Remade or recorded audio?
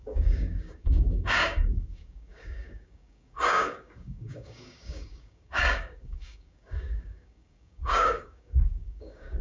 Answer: remade